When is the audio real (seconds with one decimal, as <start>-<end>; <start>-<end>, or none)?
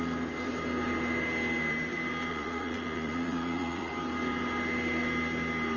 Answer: 0.0-2.3; 3.9-5.8